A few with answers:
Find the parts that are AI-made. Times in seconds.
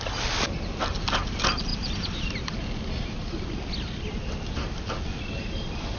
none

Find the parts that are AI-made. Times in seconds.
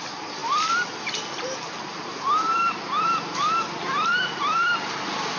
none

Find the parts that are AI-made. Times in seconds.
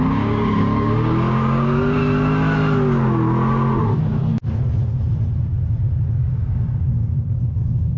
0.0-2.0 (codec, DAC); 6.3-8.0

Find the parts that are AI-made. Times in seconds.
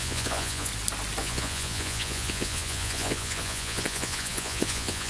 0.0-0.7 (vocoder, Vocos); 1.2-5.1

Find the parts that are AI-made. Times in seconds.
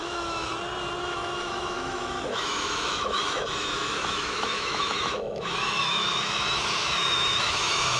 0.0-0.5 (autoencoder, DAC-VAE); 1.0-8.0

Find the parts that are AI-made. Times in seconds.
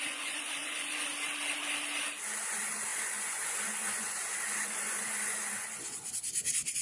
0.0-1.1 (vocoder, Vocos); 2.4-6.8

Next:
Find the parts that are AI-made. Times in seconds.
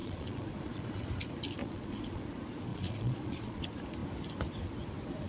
0.0-1.1 (vocoder, Vocos); 1.6-2.2; 2.7-3.6